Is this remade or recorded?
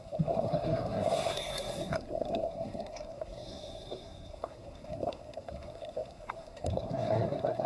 remade